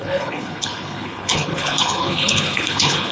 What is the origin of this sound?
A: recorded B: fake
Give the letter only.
B